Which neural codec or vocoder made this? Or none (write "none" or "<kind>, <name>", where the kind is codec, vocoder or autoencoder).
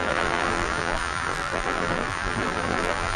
vocoder, BigVGAN v2